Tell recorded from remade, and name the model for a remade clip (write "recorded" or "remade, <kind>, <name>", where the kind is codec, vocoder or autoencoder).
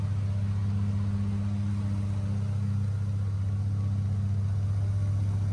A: recorded